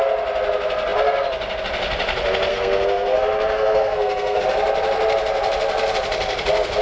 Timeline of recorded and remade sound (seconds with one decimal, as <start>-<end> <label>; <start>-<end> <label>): 0.0-2.5 recorded; 2.5-4.4 remade; 4.4-6.8 recorded